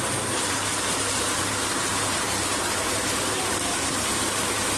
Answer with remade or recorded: remade